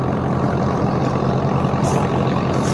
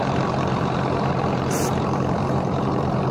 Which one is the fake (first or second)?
second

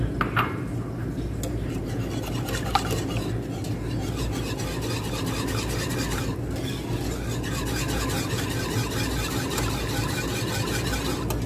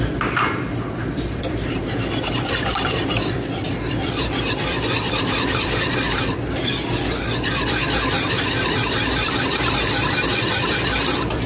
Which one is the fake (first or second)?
second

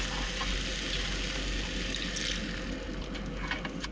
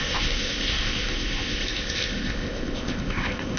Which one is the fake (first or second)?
second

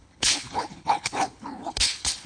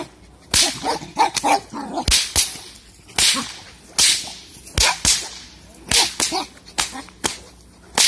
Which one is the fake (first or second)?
first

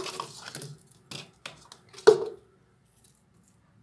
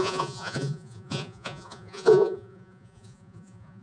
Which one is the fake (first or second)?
second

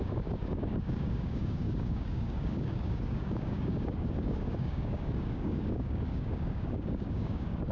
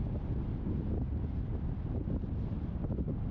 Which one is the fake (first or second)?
first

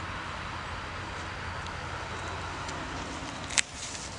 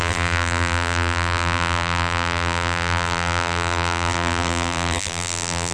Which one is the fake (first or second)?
second